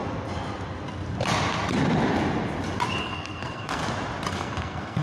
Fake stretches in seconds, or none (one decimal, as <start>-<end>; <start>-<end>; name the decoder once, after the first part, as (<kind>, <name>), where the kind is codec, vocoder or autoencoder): 3.0-3.8 (codec, SNAC); 4.3-5.0